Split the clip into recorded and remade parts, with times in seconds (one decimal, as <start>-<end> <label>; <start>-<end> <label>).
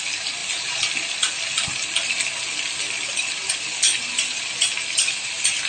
0.0-5.7 recorded